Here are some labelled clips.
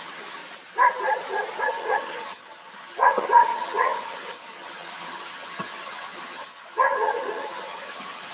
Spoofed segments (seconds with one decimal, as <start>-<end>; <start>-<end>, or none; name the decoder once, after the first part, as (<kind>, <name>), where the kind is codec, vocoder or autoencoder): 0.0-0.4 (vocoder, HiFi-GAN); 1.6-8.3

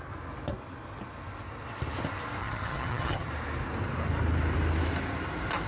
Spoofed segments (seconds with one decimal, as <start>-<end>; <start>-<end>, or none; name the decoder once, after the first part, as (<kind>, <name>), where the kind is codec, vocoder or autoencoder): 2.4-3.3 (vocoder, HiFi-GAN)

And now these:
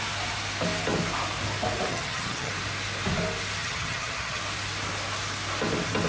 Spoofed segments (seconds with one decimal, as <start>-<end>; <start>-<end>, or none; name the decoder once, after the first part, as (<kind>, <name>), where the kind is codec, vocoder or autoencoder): 1.9-2.5 (vocoder, HiFi-GAN); 3.6-4.4

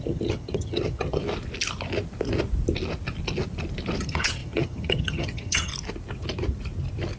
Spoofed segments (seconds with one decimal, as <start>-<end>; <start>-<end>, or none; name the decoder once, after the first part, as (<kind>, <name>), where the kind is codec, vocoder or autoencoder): 0.0-1.2 (vocoder, HiFi-GAN); 4.0-5.7

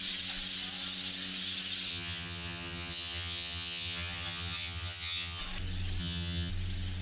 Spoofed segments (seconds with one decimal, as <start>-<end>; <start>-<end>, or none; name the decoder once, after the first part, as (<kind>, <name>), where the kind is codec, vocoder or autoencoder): 1.9-5.4 (vocoder, HiFi-GAN); 6.0-6.5